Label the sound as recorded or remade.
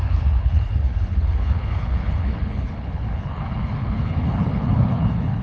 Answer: remade